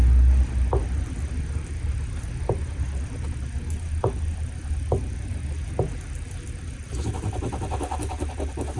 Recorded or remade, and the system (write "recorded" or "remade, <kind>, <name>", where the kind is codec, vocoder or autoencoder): recorded